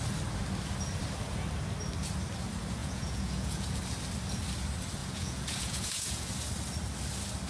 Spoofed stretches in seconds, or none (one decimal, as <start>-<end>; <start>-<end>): 2.8-3.8; 5.0-6.3